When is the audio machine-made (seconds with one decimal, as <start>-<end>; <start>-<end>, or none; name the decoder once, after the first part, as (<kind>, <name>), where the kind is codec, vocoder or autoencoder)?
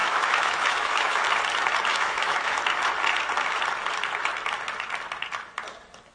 0.0-1.2 (autoencoder, DAC-VAE); 1.9-2.6